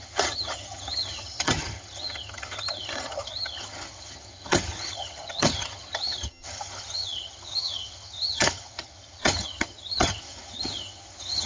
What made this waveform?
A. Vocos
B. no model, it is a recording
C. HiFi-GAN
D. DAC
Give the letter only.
C